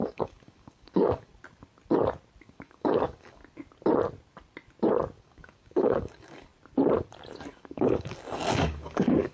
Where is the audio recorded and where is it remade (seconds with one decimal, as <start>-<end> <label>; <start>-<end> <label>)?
0.0-1.3 remade; 1.3-2.4 recorded; 2.4-3.4 remade; 3.4-5.2 recorded; 5.2-6.5 remade; 6.5-7.4 recorded; 7.4-9.3 remade